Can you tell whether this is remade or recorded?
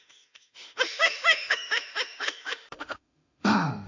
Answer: remade